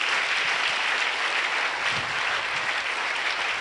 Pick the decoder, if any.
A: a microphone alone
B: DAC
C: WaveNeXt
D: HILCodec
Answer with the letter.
A